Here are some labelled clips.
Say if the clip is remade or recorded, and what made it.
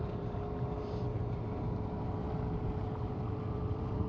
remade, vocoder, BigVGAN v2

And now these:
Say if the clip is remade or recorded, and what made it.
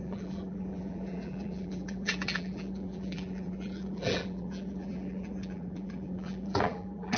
remade, vocoder, BigVGAN v2